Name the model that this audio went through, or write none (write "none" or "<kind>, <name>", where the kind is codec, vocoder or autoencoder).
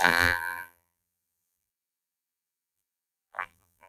vocoder, BigVGAN v2